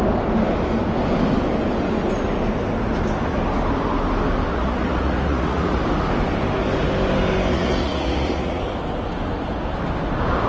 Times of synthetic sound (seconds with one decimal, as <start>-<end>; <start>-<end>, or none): 4.5-5.8; 7.5-8.6